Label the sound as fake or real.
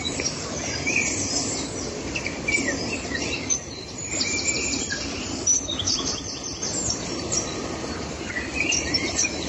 fake